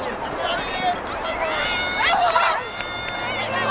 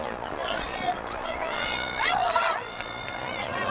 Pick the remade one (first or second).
second